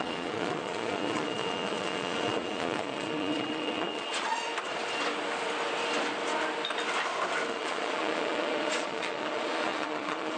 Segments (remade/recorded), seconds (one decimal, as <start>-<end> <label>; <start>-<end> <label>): 0.0-4.5 remade; 4.5-7.5 recorded; 7.5-10.4 remade